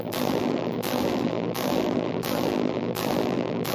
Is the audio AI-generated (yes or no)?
yes